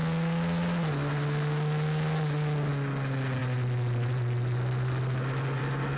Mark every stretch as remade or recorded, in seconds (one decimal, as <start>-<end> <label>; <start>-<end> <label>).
0.0-6.0 recorded